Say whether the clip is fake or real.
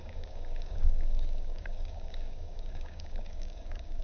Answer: fake